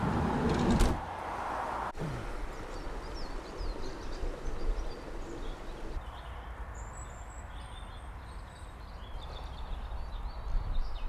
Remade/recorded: recorded